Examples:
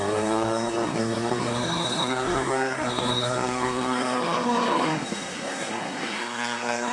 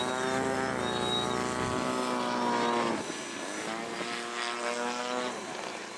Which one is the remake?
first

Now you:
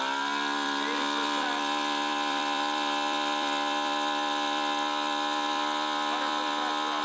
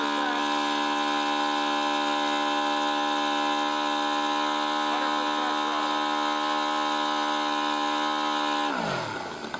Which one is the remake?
first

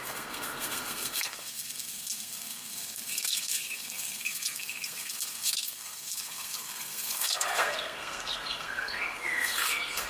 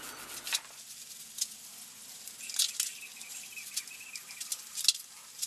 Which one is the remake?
first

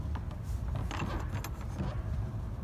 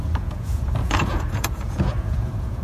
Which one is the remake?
second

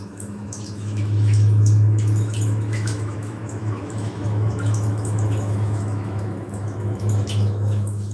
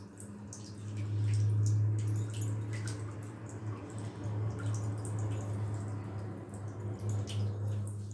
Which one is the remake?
first